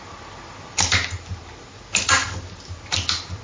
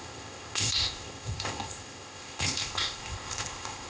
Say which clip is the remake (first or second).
second